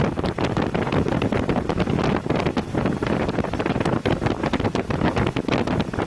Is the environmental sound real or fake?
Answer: real